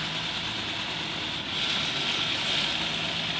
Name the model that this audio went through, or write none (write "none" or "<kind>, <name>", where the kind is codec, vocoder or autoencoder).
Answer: none